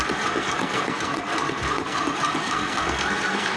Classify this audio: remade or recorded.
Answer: remade